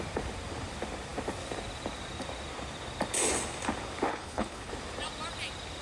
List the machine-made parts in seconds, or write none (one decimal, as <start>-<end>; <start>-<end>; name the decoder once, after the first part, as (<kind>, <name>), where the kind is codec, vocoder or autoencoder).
4.1-4.7 (codec, HILCodec)

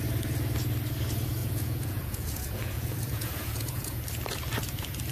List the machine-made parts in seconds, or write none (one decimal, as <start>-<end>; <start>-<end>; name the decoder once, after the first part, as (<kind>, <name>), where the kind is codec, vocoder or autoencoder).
1.4-4.0 (vocoder, Vocos)

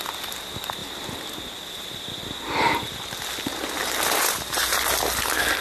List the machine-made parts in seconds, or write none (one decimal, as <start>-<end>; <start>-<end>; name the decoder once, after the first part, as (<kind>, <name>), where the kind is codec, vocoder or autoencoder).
none

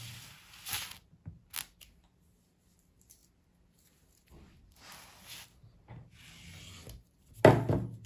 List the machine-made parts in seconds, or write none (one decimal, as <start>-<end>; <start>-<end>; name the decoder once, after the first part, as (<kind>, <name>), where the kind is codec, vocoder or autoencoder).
none

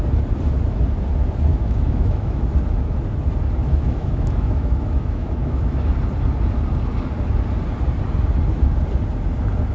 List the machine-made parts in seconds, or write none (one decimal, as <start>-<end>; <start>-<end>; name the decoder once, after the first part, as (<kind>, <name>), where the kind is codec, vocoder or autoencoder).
1.5-2.4 (autoencoder, DAC-VAE); 3.6-5.9